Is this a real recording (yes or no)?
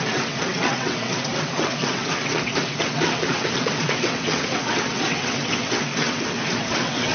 no